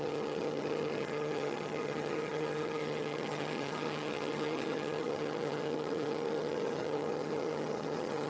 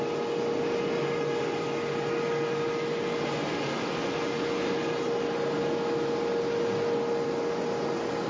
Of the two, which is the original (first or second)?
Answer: second